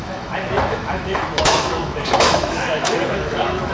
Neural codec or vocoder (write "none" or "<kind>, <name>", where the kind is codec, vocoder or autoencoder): autoencoder, DAC-VAE